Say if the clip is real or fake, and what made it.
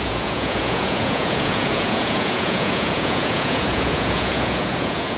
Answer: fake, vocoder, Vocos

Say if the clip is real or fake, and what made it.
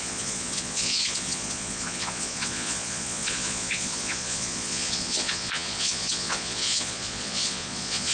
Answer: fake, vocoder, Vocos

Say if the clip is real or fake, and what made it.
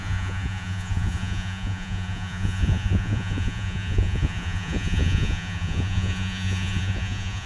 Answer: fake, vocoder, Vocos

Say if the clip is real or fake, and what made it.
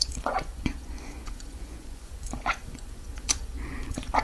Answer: fake, vocoder, Vocos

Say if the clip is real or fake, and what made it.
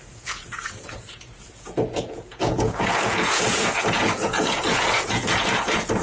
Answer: fake, vocoder, Vocos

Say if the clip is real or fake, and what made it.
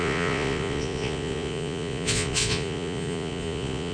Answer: fake, vocoder, Vocos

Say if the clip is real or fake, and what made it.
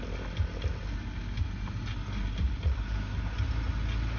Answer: real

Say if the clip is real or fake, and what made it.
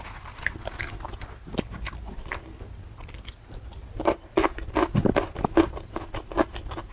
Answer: real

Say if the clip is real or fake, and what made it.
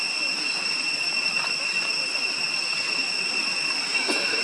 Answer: real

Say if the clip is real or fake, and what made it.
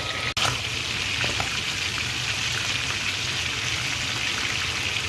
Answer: real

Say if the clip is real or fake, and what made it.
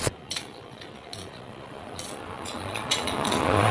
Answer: fake, vocoder, Vocos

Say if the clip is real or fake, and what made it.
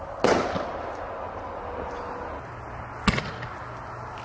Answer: real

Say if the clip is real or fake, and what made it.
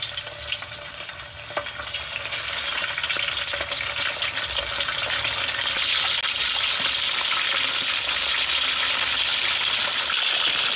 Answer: real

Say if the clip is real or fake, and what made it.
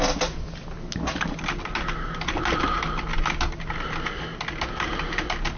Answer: real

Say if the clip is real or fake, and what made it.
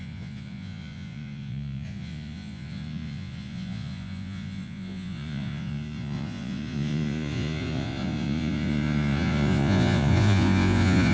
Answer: fake, vocoder, Vocos